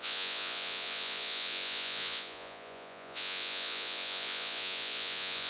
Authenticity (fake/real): fake